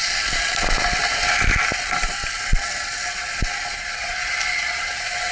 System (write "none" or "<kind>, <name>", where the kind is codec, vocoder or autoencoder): none